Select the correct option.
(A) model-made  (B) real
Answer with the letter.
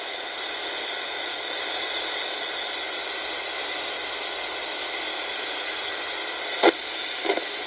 B